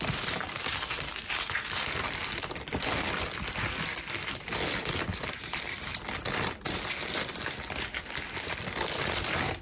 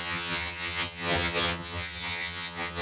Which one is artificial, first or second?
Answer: second